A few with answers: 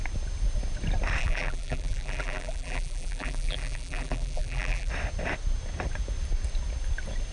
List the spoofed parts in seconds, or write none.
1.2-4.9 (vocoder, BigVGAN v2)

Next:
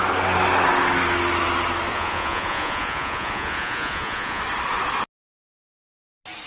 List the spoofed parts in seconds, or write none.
1.9-4.4 (vocoder, Vocos)

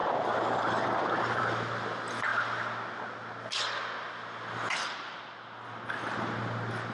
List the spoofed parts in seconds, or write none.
none

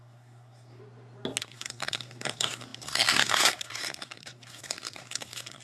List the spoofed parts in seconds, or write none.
0.0-0.8 (codec, SNAC); 1.4-5.6

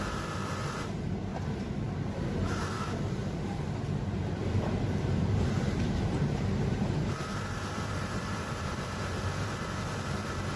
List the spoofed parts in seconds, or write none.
0.0-10.6 (vocoder, BigVGAN v2)

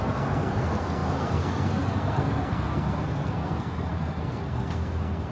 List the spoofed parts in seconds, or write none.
0.0-5.3 (codec, SNAC)

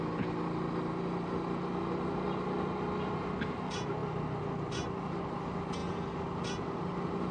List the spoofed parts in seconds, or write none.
none

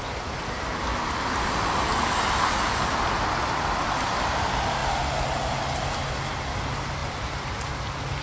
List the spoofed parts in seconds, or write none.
none